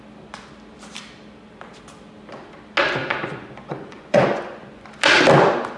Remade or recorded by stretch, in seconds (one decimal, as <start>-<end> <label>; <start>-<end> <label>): 0.0-3.0 recorded; 3.0-4.9 remade; 4.9-5.8 recorded